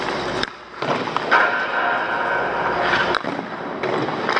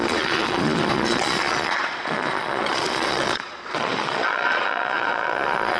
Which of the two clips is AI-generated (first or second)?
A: second